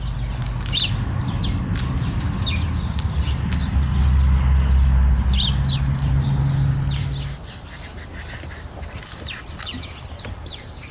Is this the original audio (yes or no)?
yes